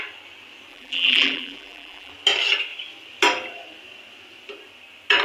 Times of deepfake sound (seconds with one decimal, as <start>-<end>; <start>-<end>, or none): 0.7-2.1